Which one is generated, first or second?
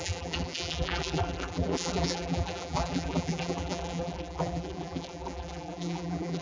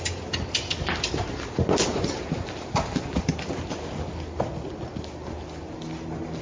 first